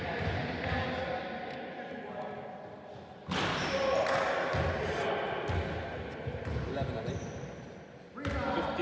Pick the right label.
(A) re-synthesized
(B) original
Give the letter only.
B